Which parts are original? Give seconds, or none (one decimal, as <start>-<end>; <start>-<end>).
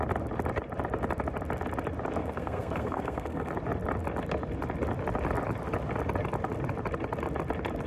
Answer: 0.0-2.2; 3.5-7.9